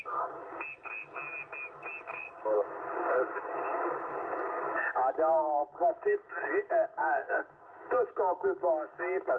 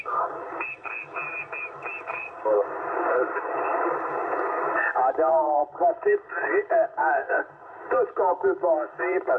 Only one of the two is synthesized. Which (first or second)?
second